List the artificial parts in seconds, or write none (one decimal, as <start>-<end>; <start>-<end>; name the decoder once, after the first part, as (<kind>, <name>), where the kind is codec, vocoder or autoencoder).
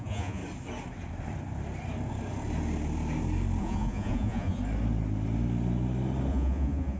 0.0-0.4 (vocoder, Vocos); 3.6-4.6; 6.3-7.0